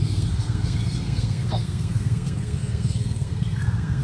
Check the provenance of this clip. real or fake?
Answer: fake